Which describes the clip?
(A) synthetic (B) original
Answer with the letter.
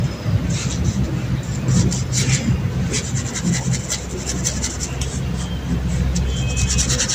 B